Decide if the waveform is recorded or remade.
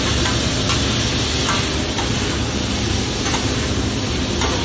recorded